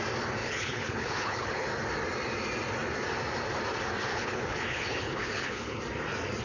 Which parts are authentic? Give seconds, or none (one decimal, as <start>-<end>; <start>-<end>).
0.0-0.4; 1.7-4.1; 5.8-6.4